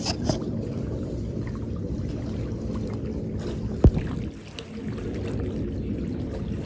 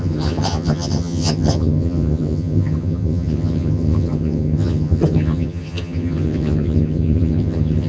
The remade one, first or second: second